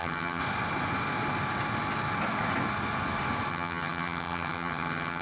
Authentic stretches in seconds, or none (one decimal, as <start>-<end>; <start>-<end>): 0.4-3.5